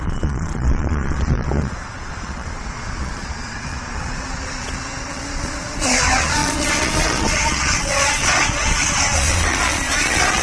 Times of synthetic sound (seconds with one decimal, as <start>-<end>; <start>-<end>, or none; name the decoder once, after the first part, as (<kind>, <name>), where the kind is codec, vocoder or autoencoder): 0.0-10.4 (vocoder, Vocos)